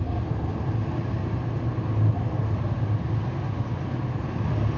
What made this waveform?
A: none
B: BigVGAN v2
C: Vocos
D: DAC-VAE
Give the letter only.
A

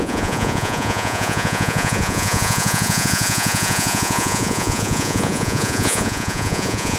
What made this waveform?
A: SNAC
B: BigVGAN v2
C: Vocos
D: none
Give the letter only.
C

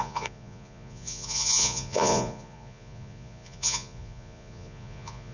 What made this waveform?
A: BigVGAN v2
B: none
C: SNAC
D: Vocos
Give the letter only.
D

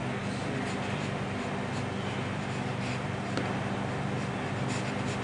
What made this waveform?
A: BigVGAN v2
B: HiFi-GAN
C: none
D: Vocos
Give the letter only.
C